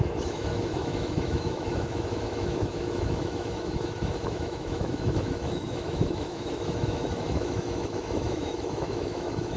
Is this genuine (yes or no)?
no